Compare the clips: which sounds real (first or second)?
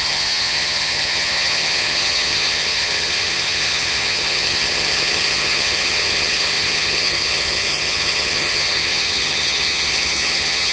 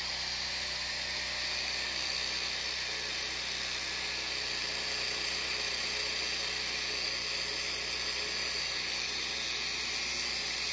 second